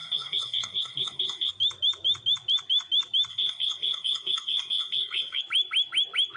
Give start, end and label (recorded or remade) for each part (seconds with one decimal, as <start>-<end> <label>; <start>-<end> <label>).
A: 0.0-1.5 remade; 1.5-3.3 recorded; 3.3-5.4 remade; 5.4-6.4 recorded